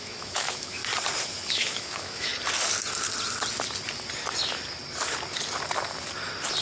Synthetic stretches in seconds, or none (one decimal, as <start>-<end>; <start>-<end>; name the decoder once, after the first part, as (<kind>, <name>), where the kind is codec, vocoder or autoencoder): 0.0-0.8 (autoencoder, DAC-VAE); 1.5-2.3